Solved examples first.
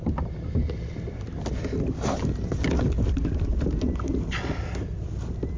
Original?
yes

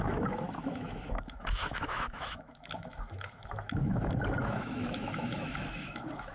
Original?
no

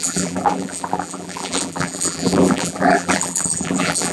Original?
no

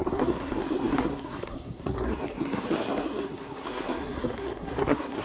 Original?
no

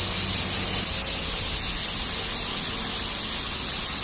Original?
yes